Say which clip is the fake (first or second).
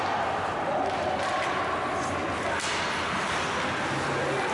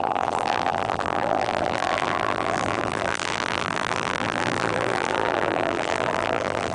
second